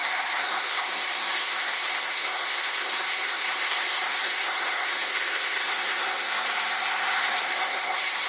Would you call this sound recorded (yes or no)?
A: no